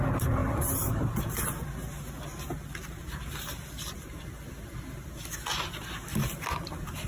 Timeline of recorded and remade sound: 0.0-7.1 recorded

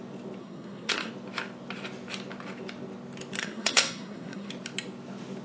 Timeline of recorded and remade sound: 0.0-0.4 recorded; 0.4-1.1 remade; 1.1-3.4 recorded; 3.4-4.5 remade; 4.5-5.4 recorded

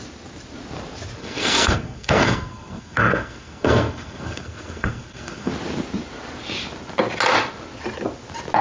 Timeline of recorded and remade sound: 0.0-1.2 recorded; 1.2-5.5 remade; 5.5-8.6 recorded

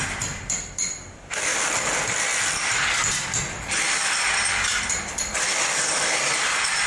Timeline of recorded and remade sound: 0.0-6.9 recorded

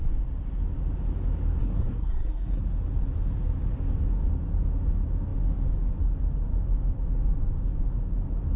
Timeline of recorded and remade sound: 0.0-1.6 recorded; 1.6-2.6 remade; 2.6-8.6 recorded

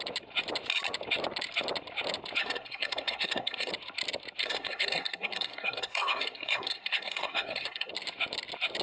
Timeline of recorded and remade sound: 0.0-2.4 recorded; 2.4-3.7 remade; 3.7-4.4 recorded; 4.4-7.9 remade; 7.9-8.8 recorded

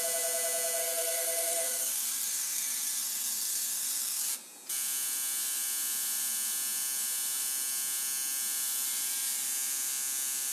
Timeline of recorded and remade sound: 0.0-0.8 recorded; 0.8-4.3 remade; 4.3-10.5 recorded

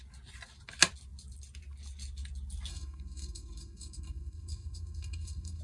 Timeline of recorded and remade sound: 0.0-2.7 recorded; 2.7-5.6 remade